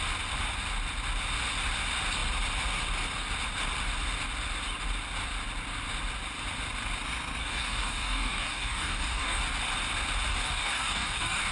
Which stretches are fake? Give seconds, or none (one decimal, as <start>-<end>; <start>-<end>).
7.4-9.4; 10.3-11.5